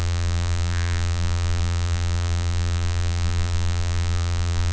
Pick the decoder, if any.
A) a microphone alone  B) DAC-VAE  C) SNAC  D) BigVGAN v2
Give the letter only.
D